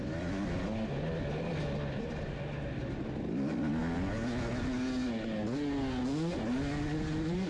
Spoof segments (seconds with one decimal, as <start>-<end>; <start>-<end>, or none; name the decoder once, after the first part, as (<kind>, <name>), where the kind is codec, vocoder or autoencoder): none